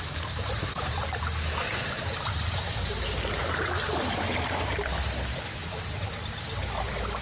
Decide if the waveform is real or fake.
real